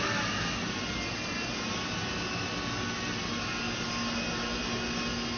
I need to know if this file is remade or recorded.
recorded